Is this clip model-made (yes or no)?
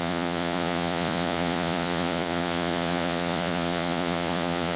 yes